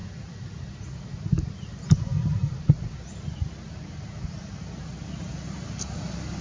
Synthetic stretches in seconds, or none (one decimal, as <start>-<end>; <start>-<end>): none